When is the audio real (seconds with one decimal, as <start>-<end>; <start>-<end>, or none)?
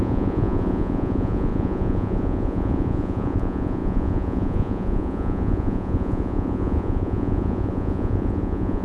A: none